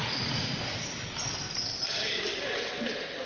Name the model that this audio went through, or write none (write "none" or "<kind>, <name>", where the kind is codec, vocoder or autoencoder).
none